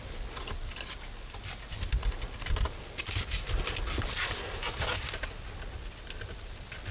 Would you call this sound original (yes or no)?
yes